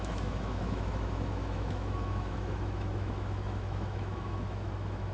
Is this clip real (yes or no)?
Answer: no